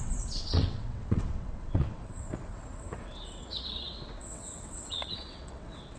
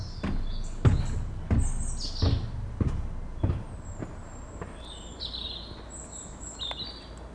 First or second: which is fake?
first